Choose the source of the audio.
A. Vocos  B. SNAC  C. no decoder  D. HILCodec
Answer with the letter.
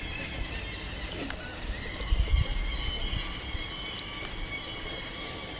C